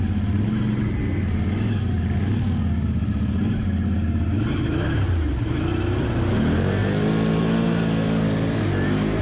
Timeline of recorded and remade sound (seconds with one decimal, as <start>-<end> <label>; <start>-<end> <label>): 0.0-9.2 recorded